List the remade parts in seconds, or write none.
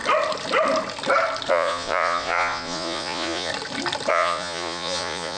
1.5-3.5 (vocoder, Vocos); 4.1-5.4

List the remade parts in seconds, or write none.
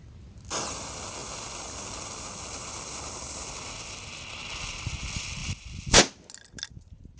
none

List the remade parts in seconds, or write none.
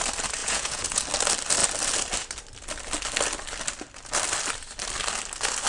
0.4-1.0 (vocoder, Vocos)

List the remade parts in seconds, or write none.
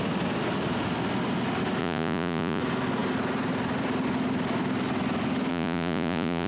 1.8-2.6 (vocoder, Vocos); 5.5-6.5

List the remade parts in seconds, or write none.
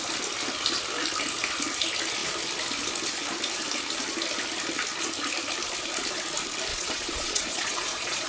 6.7-8.3 (vocoder, Vocos)